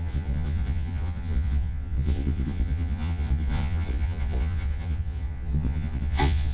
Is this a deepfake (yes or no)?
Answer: yes